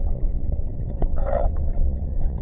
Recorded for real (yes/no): no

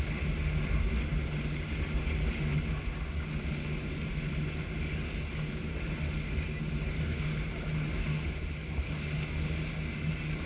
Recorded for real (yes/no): yes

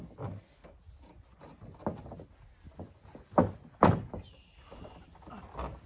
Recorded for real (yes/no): yes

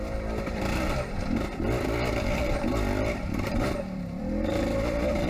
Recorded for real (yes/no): no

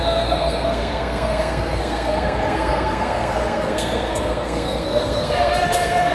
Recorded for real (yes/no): no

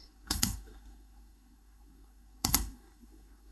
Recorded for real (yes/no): no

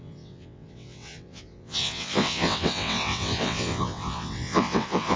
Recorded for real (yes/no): no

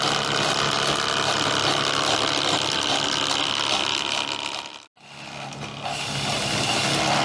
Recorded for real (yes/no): yes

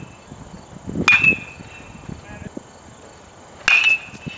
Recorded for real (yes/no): yes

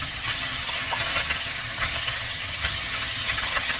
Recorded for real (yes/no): no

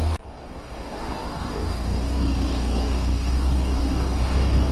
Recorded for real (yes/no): no